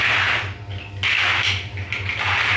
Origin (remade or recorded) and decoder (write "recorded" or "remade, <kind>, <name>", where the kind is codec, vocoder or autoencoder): recorded